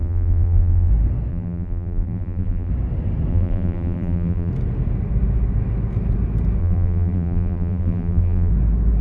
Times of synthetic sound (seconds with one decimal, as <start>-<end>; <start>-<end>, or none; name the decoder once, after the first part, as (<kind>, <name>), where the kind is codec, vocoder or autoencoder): 0.0-0.9 (vocoder, BigVGAN v2); 1.3-2.7; 3.3-4.5; 6.6-8.5